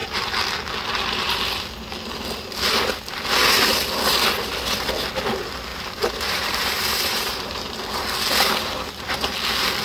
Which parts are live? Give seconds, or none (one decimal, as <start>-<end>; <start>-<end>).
0.0-5.7; 7.8-9.8